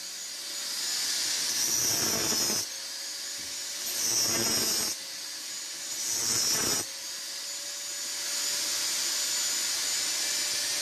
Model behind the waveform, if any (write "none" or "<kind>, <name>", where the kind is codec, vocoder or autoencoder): none